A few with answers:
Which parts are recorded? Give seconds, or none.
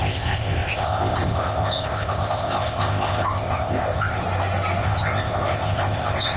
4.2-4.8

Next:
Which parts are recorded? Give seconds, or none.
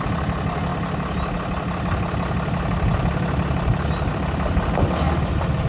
0.0-5.7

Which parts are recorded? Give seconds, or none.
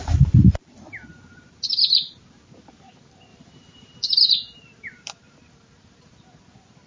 0.0-3.3; 4.3-6.9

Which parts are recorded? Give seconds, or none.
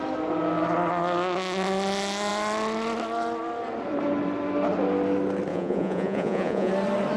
0.0-5.5; 6.7-7.2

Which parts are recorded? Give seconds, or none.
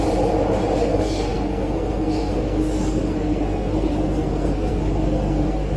0.0-0.8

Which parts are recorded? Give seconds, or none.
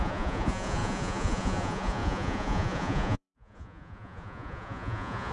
none